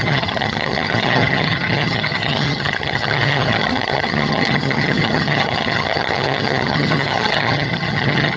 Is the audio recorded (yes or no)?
no